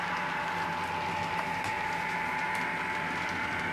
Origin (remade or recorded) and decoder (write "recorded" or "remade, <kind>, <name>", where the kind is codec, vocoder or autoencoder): recorded